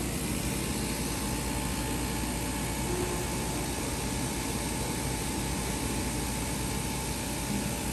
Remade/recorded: recorded